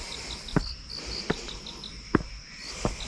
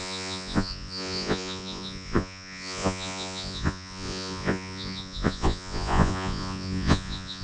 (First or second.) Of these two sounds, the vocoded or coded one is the second